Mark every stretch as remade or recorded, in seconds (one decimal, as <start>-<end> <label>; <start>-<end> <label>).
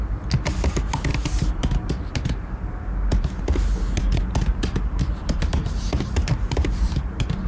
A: 0.0-1.1 recorded; 1.1-3.4 remade; 3.4-4.5 recorded; 4.5-7.5 remade